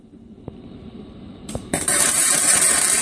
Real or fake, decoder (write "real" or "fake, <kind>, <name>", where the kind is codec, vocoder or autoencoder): fake, vocoder, BigVGAN v2